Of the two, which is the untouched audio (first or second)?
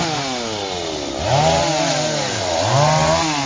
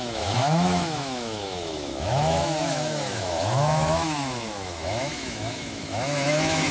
first